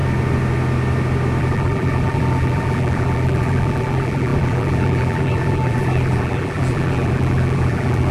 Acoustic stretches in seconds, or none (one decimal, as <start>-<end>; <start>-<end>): 0.0-1.4